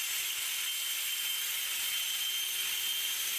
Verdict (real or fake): real